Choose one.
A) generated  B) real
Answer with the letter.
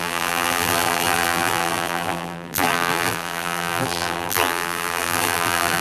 A